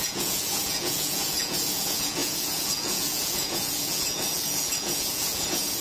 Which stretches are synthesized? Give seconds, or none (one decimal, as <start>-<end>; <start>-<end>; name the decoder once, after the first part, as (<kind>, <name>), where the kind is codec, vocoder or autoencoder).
0.0-5.8 (vocoder, Vocos)